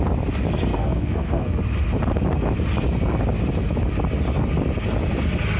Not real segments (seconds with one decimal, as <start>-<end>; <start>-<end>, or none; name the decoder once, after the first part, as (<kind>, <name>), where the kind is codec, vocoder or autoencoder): 0.7-1.6 (codec, SNAC)